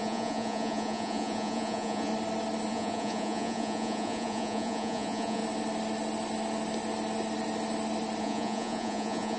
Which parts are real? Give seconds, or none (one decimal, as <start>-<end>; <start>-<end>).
2.1-2.7; 5.4-8.2